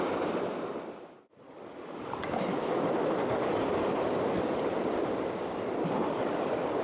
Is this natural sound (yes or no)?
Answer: no